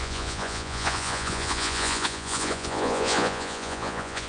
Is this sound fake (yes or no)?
yes